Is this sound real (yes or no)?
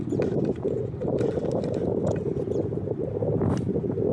yes